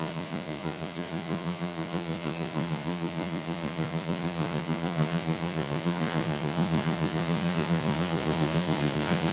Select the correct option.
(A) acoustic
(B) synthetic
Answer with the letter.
B